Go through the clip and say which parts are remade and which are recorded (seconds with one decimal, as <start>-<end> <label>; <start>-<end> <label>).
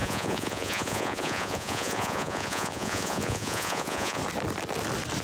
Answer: 0.0-4.2 remade; 4.2-5.2 recorded